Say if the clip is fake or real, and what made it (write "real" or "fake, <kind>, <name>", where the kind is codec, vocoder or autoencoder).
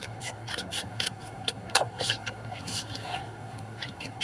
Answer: fake, codec, SNAC